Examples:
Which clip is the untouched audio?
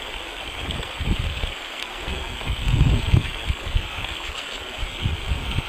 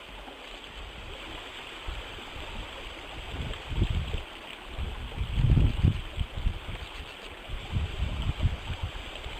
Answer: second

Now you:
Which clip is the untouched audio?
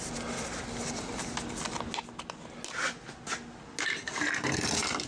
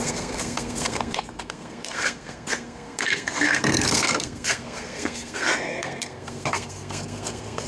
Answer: first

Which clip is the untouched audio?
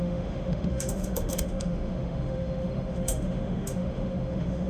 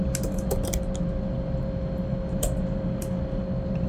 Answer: second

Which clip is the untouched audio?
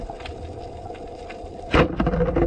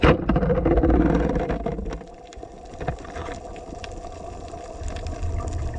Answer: first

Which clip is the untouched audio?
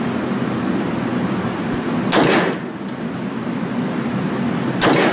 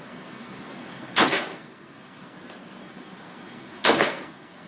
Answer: first